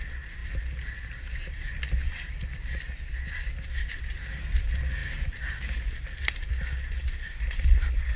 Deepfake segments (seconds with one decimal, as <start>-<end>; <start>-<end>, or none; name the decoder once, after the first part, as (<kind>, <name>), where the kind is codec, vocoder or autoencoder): none